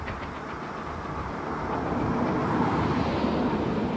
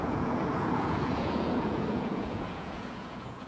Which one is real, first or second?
first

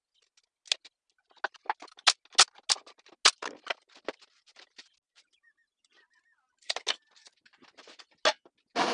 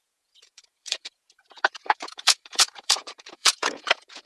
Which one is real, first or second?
first